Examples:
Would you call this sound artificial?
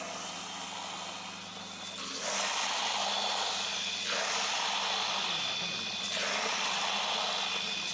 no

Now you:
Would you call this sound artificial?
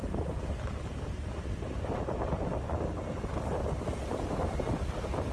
no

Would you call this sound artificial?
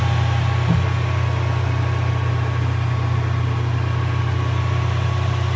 no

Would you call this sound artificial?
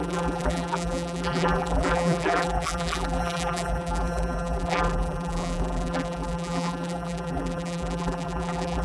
yes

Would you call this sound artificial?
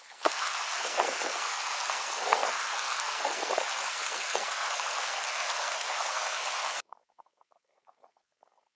yes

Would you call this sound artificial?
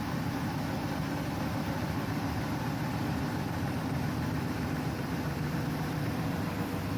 yes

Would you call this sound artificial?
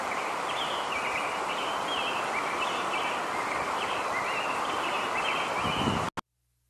no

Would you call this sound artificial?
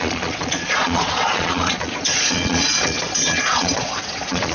yes